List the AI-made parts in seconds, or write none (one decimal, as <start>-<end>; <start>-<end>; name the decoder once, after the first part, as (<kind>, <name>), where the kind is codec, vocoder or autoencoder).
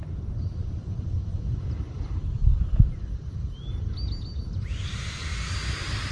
5.3-6.1 (vocoder, BigVGAN v2)